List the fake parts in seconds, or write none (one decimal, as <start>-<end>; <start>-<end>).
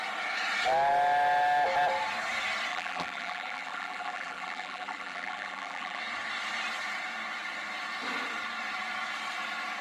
2.7-6.0